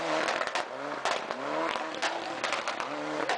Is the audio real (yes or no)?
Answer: yes